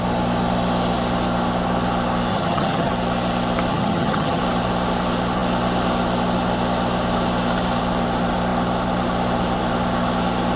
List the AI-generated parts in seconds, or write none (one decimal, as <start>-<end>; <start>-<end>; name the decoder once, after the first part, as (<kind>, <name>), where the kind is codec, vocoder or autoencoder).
2.3-2.9 (vocoder, HiFi-GAN); 3.7-4.4